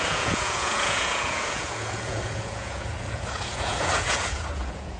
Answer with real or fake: fake